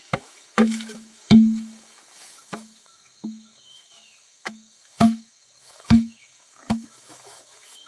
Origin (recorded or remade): remade